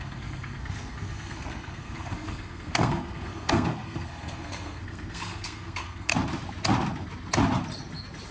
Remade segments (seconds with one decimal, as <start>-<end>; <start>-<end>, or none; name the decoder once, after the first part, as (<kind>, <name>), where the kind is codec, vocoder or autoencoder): 0.0-6.1 (codec, SNAC)